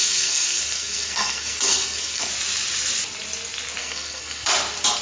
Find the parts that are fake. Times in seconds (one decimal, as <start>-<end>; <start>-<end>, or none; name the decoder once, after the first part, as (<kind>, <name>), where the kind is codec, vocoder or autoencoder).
0.0-2.3 (codec, SNAC); 3.8-4.5